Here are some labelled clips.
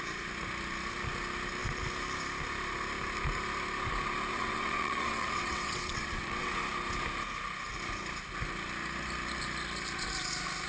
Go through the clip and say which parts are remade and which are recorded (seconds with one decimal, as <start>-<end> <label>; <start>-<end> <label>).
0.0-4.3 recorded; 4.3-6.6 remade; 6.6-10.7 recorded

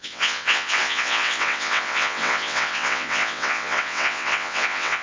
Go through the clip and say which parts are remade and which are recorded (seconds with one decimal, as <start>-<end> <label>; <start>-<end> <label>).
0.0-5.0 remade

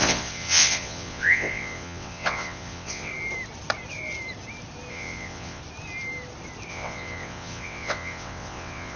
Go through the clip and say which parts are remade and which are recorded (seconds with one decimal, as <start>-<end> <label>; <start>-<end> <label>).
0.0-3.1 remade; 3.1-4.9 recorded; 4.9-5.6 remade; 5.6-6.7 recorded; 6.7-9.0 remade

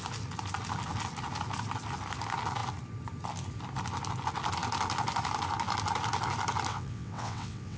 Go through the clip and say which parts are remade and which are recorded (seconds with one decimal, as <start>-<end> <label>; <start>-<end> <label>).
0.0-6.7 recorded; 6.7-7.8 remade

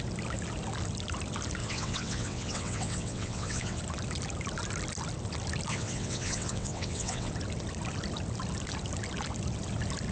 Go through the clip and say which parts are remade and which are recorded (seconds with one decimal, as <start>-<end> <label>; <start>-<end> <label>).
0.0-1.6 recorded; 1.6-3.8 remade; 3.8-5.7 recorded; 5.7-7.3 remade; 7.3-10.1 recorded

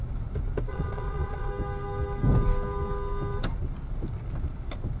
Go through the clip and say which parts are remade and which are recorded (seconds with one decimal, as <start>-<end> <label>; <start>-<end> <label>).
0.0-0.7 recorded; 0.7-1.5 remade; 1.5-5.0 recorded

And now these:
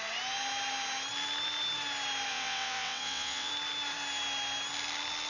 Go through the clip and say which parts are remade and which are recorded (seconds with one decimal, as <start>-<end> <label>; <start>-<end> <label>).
0.0-2.3 recorded; 2.3-3.5 remade; 3.5-5.3 recorded

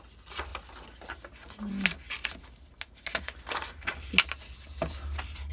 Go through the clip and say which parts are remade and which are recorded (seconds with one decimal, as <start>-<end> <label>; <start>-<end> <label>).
0.0-5.5 recorded